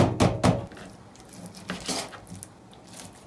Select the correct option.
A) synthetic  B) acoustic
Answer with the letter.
B